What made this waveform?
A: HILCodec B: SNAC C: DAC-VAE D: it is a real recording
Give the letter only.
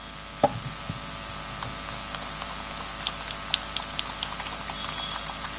D